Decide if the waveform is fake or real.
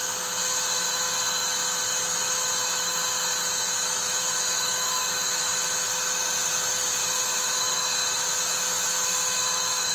fake